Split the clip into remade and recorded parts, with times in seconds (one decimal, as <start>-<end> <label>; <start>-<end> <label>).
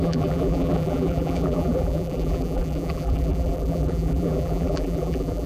0.0-5.5 remade